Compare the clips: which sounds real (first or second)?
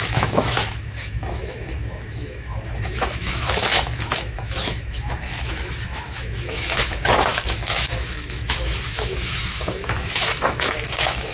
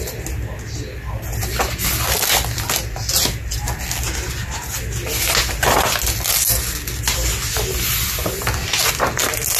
second